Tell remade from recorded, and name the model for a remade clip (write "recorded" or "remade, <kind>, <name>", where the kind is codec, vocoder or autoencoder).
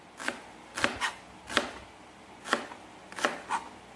recorded